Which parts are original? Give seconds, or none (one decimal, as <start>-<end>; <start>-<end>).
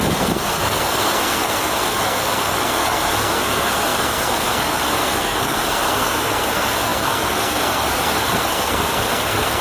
none